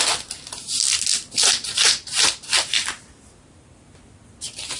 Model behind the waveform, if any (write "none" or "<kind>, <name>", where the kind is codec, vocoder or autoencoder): none